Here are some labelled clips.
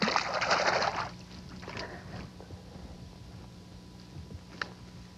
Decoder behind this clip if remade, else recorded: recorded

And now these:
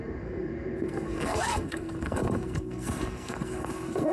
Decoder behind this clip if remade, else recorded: remade, codec, SNAC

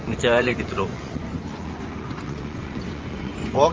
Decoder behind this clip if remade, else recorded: remade, vocoder, Vocos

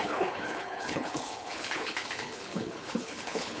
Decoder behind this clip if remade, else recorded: remade, codec, HILCodec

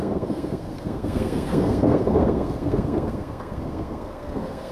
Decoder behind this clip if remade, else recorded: remade, codec, SNAC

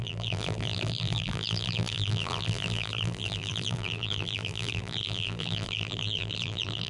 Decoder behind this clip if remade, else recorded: remade, vocoder, BigVGAN v2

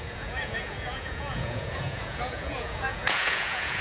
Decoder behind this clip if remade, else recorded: remade, vocoder, Vocos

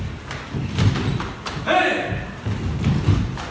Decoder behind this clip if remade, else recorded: recorded